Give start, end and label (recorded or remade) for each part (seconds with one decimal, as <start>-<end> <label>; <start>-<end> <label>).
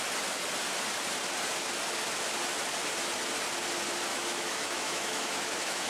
0.0-4.1 recorded; 4.1-5.9 remade